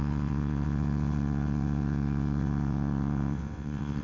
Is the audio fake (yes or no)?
yes